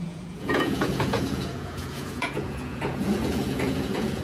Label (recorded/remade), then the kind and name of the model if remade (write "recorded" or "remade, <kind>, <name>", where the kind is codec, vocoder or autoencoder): remade, vocoder, Vocos